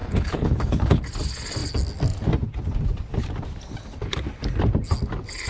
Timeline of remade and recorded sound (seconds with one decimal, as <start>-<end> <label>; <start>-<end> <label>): 0.0-1.0 remade; 1.0-5.5 recorded

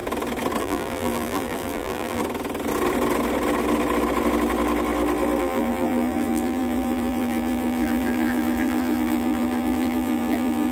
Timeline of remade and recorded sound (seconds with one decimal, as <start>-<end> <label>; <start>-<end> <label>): 0.0-0.6 recorded; 0.6-2.2 remade; 2.2-5.4 recorded; 5.4-10.7 remade

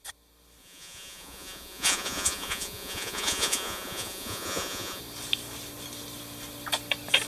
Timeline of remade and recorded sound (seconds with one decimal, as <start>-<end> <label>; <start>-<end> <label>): 0.0-0.6 recorded; 0.6-5.0 remade; 5.0-7.3 recorded

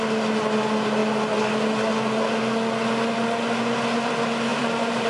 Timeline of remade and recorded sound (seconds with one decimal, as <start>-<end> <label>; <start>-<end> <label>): 0.0-4.5 recorded; 4.5-5.1 remade